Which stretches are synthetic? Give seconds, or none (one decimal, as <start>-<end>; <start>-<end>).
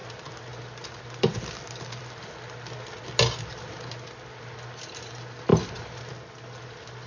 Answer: none